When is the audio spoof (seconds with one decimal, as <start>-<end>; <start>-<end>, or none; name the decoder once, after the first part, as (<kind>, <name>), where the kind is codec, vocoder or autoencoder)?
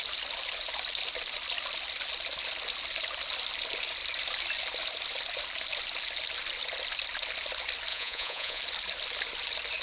7.9-8.6 (vocoder, Vocos)